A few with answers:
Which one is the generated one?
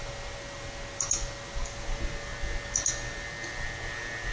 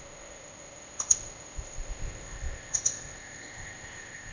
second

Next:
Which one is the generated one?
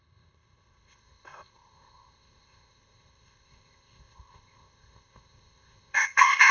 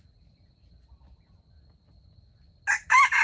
first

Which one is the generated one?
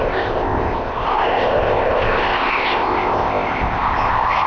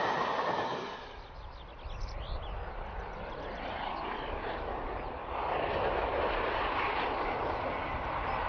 first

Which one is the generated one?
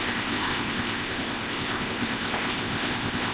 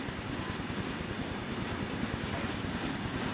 first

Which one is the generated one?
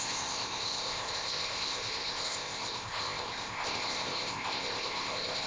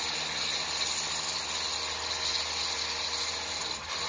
first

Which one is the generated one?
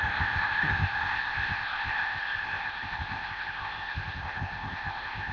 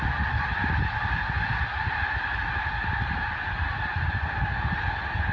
first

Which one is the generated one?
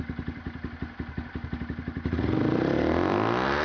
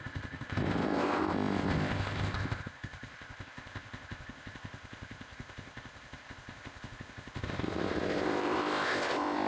second